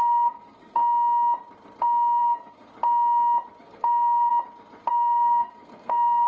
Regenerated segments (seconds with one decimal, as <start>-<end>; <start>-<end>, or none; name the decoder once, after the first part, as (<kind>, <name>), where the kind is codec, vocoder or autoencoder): 0.0-0.8 (codec, SNAC); 2.2-2.7; 3.6-4.3; 4.9-6.3